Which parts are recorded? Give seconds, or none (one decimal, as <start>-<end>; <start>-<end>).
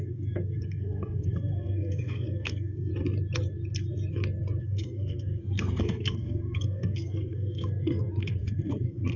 2.9-4.6